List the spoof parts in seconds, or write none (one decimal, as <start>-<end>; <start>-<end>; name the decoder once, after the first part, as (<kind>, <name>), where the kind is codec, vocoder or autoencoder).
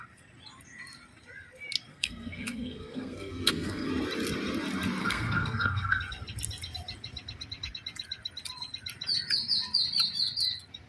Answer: 1.9-3.9 (codec, SNAC); 5.0-6.0